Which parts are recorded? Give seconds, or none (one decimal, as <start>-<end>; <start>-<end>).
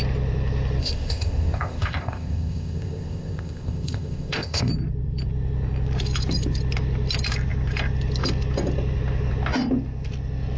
0.0-0.8; 4.7-10.6